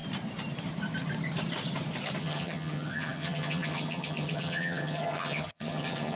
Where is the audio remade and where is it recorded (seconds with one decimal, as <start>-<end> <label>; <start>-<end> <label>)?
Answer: 0.0-2.2 recorded; 2.2-6.2 remade